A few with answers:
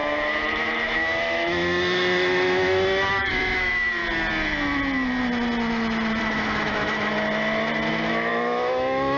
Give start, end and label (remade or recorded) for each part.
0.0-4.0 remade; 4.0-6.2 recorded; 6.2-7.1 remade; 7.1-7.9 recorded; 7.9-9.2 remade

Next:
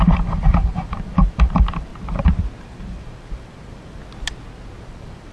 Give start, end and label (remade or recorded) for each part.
0.0-1.9 remade; 1.9-2.6 recorded; 2.6-4.0 remade; 4.0-4.8 recorded; 4.8-5.3 remade

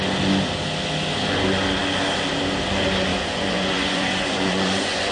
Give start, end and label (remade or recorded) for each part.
0.0-3.1 recorded; 3.1-5.1 remade